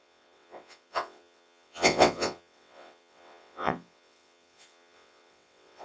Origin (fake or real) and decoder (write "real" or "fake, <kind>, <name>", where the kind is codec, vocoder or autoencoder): fake, vocoder, WaveNeXt